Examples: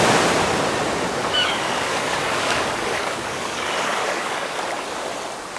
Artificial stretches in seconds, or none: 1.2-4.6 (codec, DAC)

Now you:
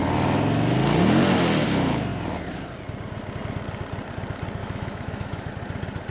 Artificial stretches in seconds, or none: 4.6-5.5 (autoencoder, DAC-VAE)